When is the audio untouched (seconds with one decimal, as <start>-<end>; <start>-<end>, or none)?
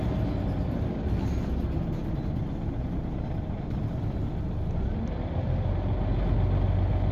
0.0-2.0; 5.7-7.1